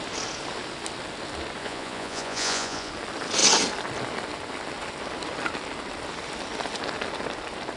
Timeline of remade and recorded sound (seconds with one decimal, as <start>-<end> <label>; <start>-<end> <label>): 0.0-1.6 recorded; 1.6-2.9 remade; 2.9-7.8 recorded

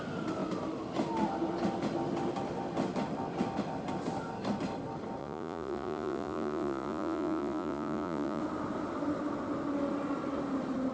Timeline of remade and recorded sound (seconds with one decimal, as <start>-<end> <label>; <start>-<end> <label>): 0.0-5.2 recorded; 5.2-8.4 remade; 8.4-10.9 recorded